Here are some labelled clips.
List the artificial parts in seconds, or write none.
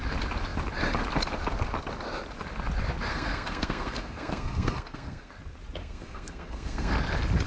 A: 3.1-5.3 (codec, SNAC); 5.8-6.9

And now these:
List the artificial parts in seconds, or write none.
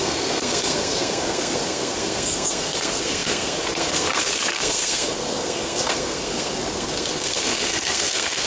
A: 0.0-8.5 (codec, SNAC)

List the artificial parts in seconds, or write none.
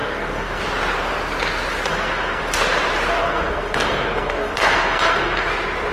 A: 0.0-0.6 (codec, SNAC); 1.9-2.4; 3.2-5.5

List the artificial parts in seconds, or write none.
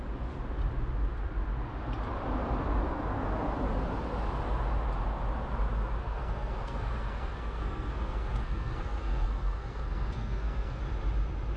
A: 6.0-10.8 (codec, SNAC)